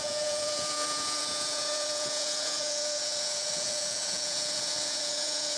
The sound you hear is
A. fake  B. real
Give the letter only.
A